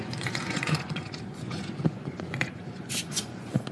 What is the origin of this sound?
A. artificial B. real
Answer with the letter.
A